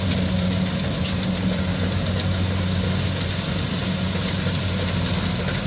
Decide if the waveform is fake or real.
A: real